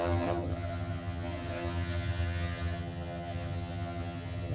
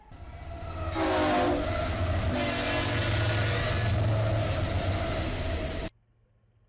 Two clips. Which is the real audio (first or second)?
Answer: second